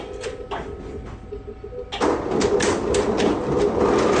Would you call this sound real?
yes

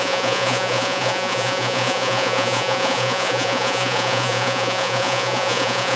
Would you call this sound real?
no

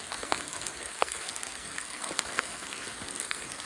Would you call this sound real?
no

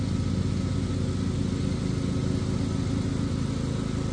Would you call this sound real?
yes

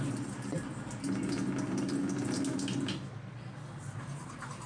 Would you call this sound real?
yes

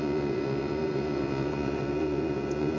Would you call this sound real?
no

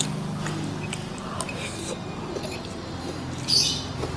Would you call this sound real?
yes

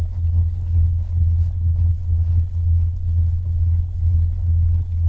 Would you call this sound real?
no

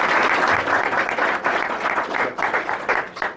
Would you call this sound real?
yes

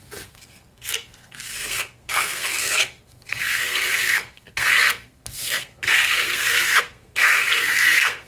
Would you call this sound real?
no